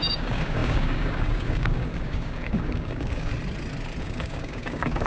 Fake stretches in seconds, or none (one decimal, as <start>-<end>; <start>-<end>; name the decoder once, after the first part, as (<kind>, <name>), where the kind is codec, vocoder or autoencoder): 0.0-3.3 (codec, DAC); 4.0-5.1